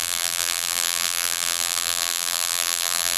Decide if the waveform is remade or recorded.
remade